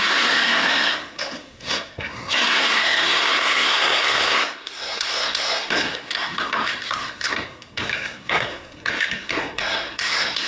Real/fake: fake